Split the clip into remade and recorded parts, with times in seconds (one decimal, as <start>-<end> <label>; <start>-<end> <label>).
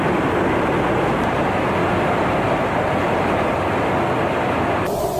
0.0-3.0 recorded; 3.0-3.5 remade; 3.5-5.2 recorded